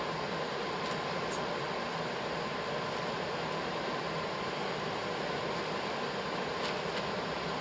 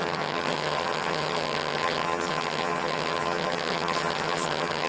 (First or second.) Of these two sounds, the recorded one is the first